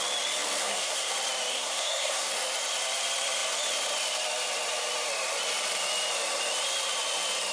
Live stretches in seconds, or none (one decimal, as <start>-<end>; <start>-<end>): 0.0-0.6; 1.1-1.5; 2.3-7.5